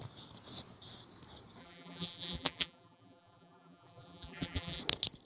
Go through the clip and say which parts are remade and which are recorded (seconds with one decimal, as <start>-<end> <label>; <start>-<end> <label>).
0.0-1.6 recorded; 1.6-4.8 remade; 4.8-5.3 recorded

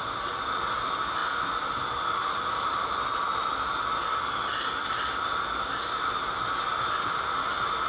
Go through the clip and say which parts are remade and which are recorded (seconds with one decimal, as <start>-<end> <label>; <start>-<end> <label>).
0.0-7.9 recorded

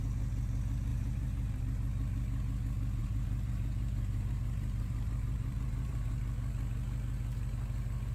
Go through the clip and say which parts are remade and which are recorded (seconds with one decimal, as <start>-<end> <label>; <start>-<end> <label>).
0.0-0.9 recorded; 0.9-1.6 remade; 1.6-3.0 recorded; 3.0-6.2 remade; 6.2-8.1 recorded

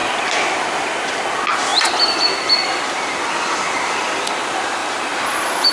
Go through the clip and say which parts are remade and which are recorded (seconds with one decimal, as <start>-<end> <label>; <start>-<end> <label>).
0.0-4.8 recorded; 4.8-5.7 remade

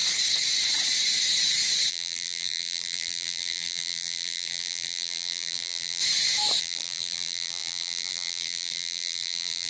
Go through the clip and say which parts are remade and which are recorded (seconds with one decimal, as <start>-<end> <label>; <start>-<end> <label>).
0.0-1.9 recorded; 1.9-6.0 remade; 6.0-6.6 recorded; 6.6-9.7 remade

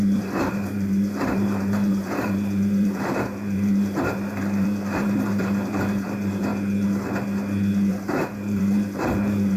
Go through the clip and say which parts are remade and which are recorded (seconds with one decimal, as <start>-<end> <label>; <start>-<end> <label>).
0.0-6.5 remade; 6.5-7.9 recorded; 7.9-9.6 remade

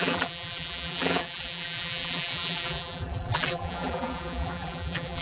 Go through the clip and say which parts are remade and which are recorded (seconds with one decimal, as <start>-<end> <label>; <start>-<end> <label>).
0.0-5.2 remade